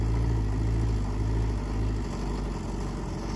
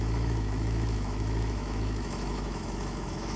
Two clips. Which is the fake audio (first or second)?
second